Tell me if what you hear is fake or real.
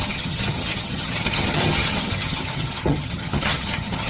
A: fake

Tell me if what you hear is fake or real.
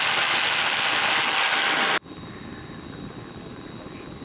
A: real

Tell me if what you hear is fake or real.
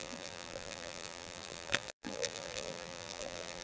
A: fake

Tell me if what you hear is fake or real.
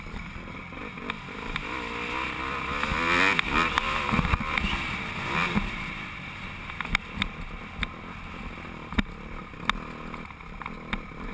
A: real